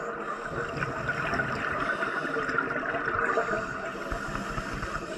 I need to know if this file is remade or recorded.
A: recorded